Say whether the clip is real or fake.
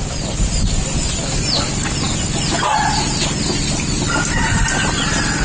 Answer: fake